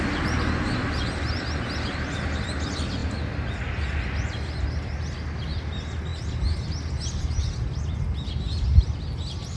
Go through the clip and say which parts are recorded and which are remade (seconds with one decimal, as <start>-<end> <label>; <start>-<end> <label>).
0.0-9.6 recorded